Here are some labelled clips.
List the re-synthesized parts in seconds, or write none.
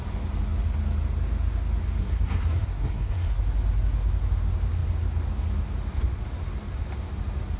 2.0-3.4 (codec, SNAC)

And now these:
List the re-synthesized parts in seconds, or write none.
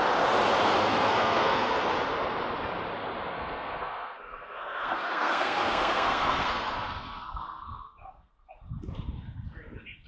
0.8-1.8 (codec, SNAC); 3.3-8.3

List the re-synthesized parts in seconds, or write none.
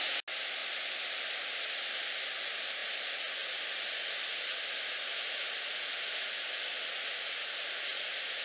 none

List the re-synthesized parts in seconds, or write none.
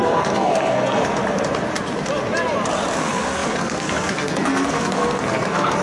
0.0-1.0 (codec, SNAC); 3.0-5.8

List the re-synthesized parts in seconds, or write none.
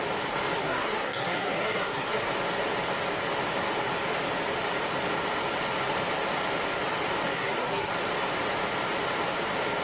0.6-2.3 (codec, SNAC); 7.3-7.9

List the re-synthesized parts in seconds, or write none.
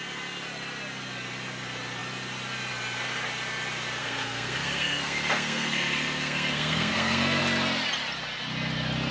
4.0-7.4 (codec, SNAC)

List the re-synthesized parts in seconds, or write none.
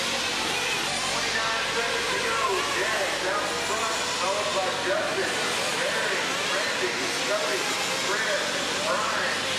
none